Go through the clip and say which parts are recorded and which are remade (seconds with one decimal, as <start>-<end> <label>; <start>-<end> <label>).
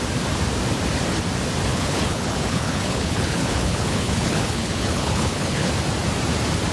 0.0-1.7 recorded; 1.7-5.7 remade; 5.7-6.7 recorded